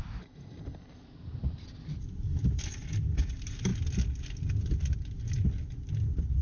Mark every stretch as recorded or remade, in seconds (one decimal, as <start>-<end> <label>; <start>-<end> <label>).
0.0-2.2 remade; 2.2-3.2 recorded; 3.2-3.7 remade; 3.7-5.4 recorded; 5.4-6.4 remade